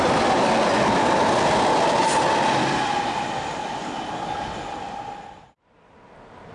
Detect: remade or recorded recorded